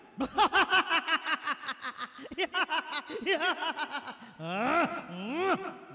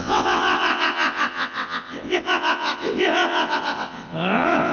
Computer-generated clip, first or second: second